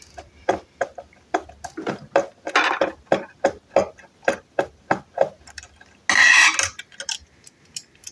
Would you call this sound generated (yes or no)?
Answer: no